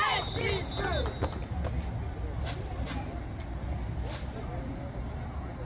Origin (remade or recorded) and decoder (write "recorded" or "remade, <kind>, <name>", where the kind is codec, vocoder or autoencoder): recorded